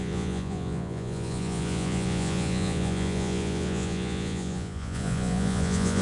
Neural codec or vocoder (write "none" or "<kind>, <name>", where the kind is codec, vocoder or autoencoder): vocoder, Vocos